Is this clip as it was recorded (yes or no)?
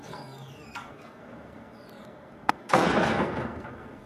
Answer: no